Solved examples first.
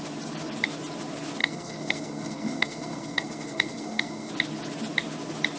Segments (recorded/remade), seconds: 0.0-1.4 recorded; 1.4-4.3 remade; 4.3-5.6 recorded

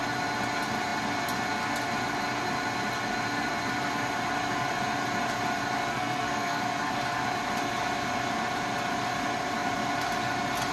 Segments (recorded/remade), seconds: 0.0-5.9 recorded; 5.9-6.6 remade; 6.6-10.7 recorded

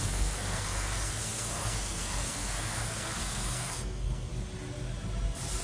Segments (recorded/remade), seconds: 0.0-4.3 remade; 4.3-5.6 recorded

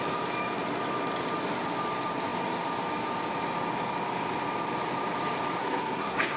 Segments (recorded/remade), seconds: 0.0-5.6 recorded; 5.6-6.4 remade

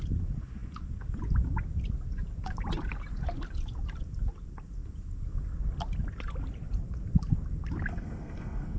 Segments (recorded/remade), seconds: 0.0-7.9 recorded; 7.9-8.8 remade

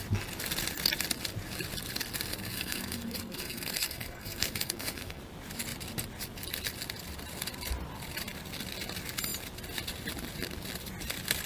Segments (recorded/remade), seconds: 0.0-2.3 recorded; 2.3-5.2 remade; 5.2-11.5 recorded

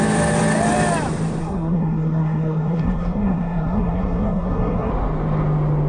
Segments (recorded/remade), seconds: 0.0-1.4 recorded; 1.4-4.9 remade; 4.9-5.9 recorded

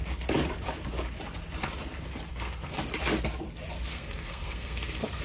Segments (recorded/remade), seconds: 0.0-2.3 recorded; 2.3-2.8 remade; 2.8-3.9 recorded; 3.9-5.2 remade